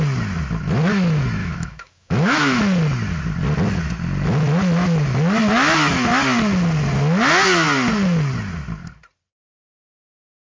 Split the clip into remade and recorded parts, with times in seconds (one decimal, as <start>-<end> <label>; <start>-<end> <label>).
0.0-1.4 recorded; 1.4-2.6 remade; 2.6-10.5 recorded